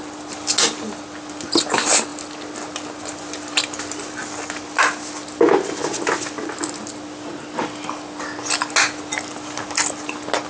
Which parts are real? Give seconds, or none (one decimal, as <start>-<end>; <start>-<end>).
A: 0.0-10.5